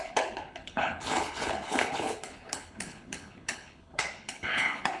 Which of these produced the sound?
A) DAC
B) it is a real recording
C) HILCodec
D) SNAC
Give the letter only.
C